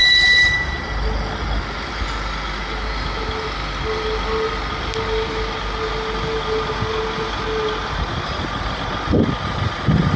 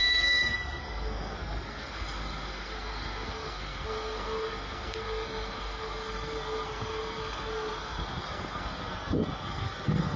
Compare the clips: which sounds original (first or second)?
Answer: first